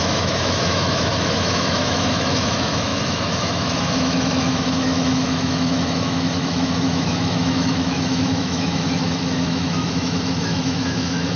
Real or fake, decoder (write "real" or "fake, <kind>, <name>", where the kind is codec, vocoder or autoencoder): fake, autoencoder, DAC-VAE